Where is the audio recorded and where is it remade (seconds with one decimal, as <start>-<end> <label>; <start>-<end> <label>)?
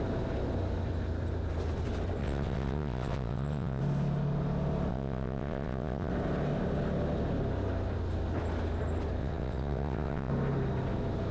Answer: 0.0-2.2 recorded; 2.2-3.8 remade; 3.8-4.9 recorded; 4.9-6.1 remade; 6.1-9.2 recorded; 9.2-10.3 remade; 10.3-11.3 recorded